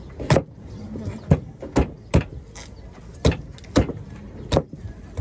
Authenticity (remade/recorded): recorded